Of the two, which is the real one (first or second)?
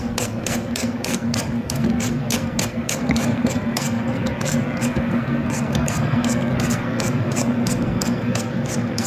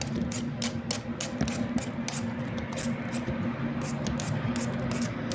second